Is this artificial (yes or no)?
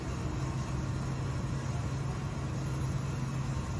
no